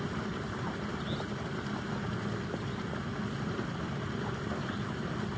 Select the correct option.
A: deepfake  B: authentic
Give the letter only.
B